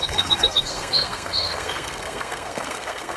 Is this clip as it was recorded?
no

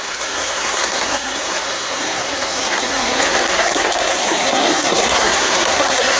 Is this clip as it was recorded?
no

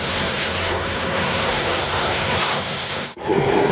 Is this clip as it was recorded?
no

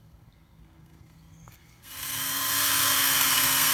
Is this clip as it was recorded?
no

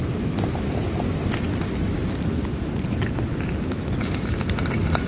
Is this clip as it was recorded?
yes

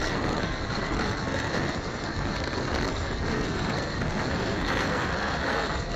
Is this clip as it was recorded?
no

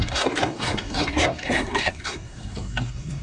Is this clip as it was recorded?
no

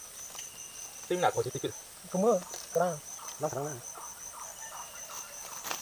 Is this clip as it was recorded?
yes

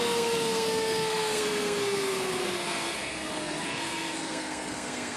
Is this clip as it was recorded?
no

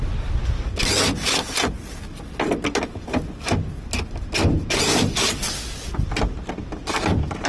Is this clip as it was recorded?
yes